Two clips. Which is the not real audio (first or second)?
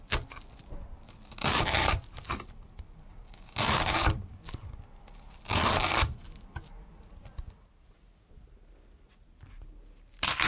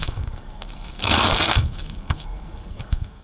second